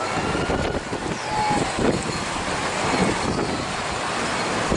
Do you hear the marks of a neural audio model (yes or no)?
no